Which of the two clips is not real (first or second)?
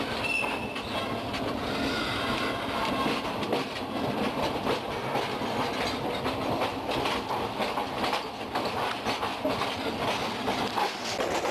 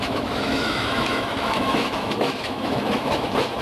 second